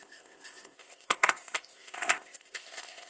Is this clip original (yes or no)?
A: no